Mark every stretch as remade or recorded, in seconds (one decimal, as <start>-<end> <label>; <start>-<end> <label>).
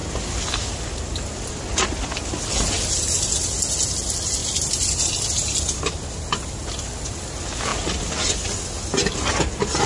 0.0-4.4 recorded; 4.4-7.2 remade; 7.2-9.9 recorded